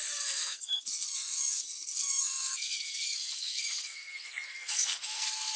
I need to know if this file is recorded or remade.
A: remade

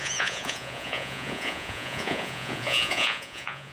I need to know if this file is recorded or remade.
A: remade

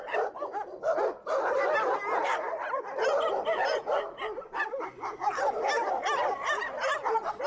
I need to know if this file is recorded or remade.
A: recorded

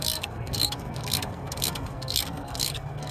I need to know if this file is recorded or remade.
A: remade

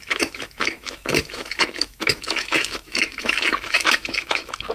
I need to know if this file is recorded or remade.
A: remade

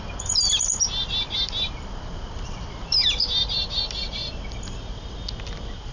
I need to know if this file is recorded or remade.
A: recorded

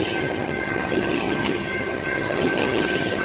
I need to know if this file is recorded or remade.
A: remade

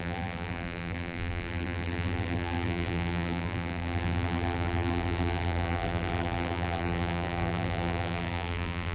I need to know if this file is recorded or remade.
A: remade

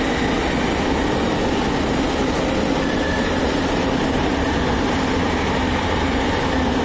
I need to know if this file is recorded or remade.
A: recorded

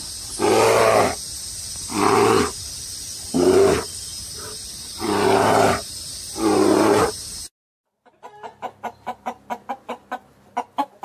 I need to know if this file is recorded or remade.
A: recorded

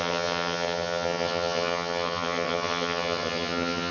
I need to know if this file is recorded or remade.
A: remade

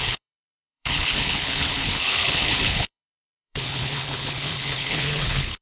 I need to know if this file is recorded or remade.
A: remade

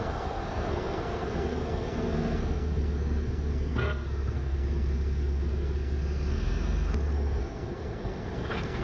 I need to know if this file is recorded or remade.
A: remade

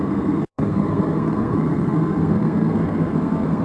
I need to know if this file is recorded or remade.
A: remade